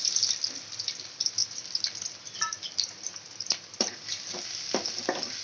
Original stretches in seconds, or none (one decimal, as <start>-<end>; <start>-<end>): 0.0-1.4; 3.9-5.4